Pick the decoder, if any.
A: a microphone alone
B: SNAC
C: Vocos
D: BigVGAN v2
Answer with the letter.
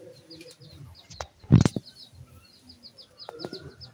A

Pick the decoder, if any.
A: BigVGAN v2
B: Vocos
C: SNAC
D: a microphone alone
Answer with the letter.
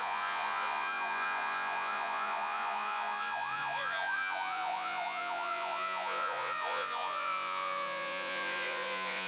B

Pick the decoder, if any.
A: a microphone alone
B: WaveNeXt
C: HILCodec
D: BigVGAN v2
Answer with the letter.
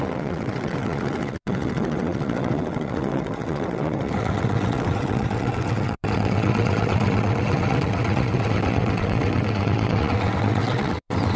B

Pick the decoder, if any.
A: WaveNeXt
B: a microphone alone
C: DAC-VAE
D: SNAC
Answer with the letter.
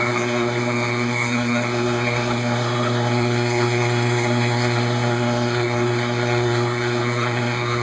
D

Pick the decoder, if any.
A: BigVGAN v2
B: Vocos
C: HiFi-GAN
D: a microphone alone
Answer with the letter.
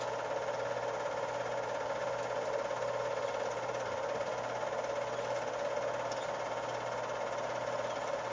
D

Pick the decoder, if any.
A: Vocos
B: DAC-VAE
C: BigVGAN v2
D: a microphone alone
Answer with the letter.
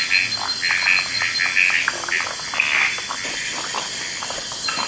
D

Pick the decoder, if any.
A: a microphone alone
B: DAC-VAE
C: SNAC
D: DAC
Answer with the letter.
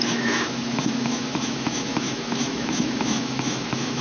B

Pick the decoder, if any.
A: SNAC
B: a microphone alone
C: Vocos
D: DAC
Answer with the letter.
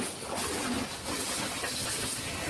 B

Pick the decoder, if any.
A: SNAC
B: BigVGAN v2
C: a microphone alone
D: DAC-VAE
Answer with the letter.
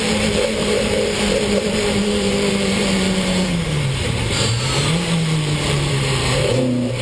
B